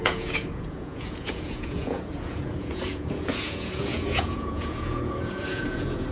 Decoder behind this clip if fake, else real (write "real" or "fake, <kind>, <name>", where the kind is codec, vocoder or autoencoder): fake, vocoder, Vocos